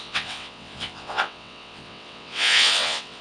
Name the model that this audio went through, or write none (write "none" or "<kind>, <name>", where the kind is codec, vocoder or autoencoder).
vocoder, WaveNeXt